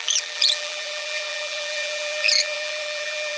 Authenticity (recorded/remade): remade